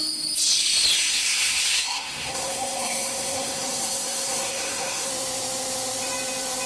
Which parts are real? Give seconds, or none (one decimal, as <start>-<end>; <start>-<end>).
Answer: 0.0-1.1; 5.1-6.7